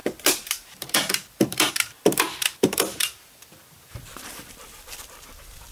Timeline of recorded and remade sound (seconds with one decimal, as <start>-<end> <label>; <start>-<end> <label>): 0.0-5.7 remade